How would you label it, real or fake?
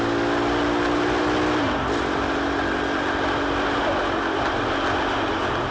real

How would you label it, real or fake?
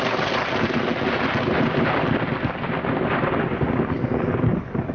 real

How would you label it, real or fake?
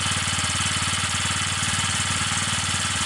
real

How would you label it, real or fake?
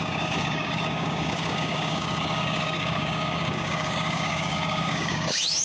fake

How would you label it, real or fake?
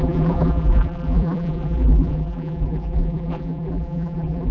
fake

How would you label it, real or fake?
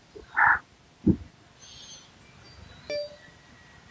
real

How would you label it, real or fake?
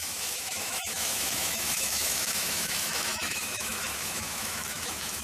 fake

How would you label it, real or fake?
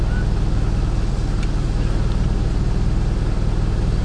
real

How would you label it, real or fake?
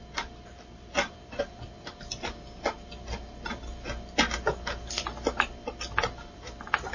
real